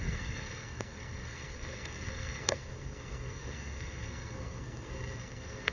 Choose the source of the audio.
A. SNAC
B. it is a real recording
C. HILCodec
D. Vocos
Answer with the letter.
A